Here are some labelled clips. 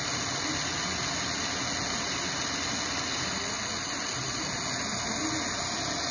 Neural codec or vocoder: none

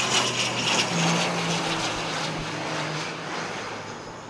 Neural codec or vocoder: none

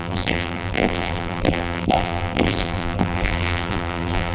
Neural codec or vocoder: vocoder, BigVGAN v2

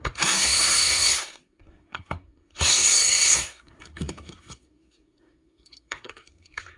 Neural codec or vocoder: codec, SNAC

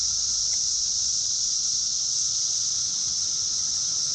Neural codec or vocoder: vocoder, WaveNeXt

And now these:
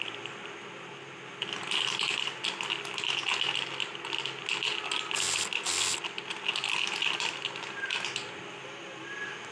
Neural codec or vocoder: none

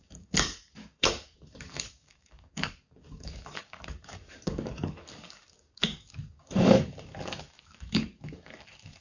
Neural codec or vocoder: codec, DAC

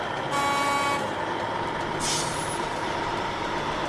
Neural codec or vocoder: none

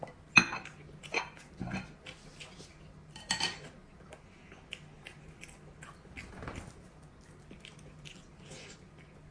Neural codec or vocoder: none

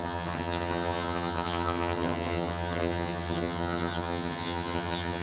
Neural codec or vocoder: vocoder, HiFi-GAN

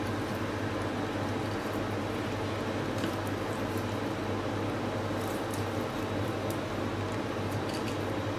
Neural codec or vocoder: none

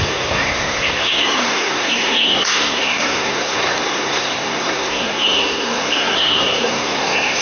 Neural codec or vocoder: codec, SNAC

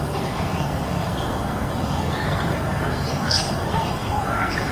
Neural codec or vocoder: codec, SNAC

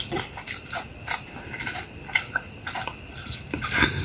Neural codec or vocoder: none